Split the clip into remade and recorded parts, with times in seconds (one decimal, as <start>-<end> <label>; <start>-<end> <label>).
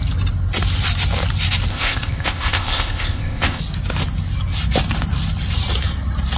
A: 0.0-1.7 recorded; 1.7-3.6 remade; 3.6-6.4 recorded